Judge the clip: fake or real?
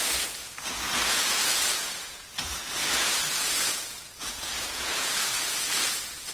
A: fake